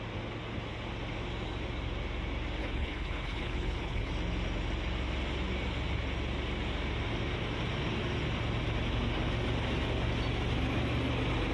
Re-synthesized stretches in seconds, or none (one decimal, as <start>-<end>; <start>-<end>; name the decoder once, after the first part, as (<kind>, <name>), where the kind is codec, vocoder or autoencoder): 2.6-4.1 (codec, HILCodec)